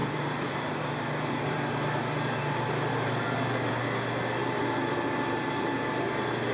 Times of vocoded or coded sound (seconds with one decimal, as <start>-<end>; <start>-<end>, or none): 0.0-3.7; 4.4-5.8